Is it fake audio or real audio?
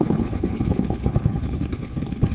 fake